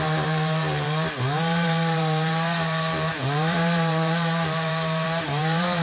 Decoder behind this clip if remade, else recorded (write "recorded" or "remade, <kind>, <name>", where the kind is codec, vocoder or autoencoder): remade, vocoder, BigVGAN v2